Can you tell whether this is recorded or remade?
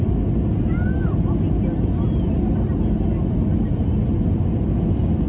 recorded